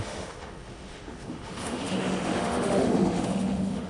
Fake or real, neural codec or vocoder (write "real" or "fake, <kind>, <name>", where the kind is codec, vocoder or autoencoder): fake, autoencoder, DAC-VAE